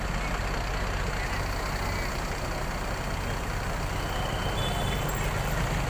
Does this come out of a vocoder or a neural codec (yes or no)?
no